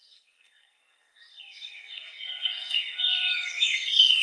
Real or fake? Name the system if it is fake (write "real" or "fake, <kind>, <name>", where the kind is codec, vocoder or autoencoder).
fake, codec, SNAC